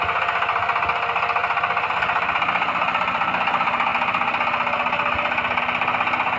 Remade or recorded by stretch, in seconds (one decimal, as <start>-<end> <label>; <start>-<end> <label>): 0.0-6.4 recorded